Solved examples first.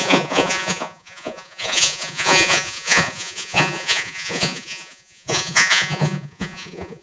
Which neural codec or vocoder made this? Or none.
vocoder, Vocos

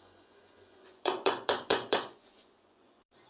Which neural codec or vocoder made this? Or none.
vocoder, Vocos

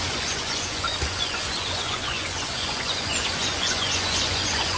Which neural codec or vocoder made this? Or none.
vocoder, Vocos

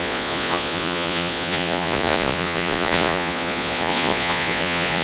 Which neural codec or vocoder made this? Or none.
vocoder, Vocos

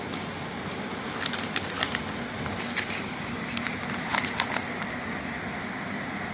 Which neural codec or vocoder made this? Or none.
none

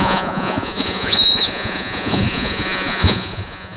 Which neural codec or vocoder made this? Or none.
vocoder, Vocos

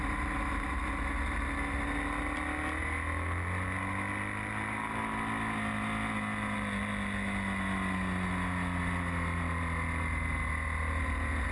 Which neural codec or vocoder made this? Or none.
none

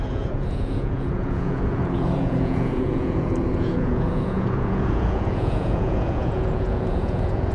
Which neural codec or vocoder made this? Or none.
vocoder, Vocos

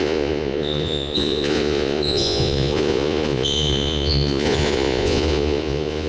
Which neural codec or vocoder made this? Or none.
vocoder, Vocos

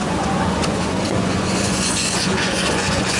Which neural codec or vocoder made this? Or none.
vocoder, Vocos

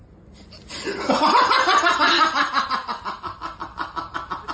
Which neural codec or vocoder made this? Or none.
none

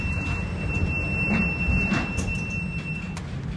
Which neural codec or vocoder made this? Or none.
none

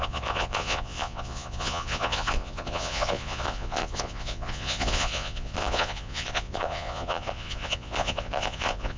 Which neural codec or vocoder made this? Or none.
vocoder, Vocos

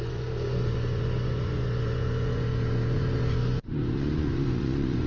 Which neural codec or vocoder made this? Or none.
vocoder, Vocos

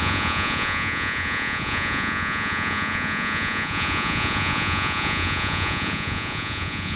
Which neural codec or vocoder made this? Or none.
vocoder, Vocos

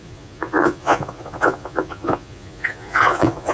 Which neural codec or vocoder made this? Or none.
vocoder, Vocos